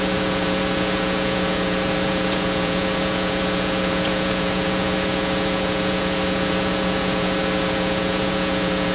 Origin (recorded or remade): remade